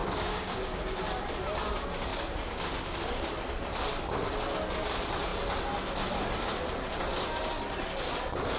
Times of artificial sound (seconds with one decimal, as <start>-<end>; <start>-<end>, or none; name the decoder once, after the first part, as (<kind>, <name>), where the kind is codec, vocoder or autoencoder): 0.0-1.0 (codec, DAC)